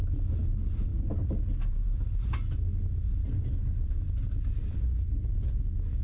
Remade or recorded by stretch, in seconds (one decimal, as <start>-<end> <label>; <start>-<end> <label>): 0.0-3.1 recorded; 3.1-4.4 remade; 4.4-6.0 recorded